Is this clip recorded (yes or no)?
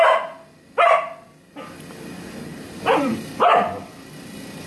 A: yes